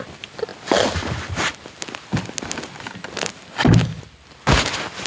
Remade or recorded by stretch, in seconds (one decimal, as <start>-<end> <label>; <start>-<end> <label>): 0.0-5.1 recorded